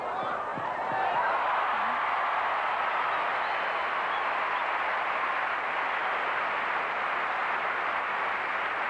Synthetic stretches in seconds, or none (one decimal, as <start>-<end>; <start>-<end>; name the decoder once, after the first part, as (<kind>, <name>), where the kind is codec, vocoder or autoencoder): none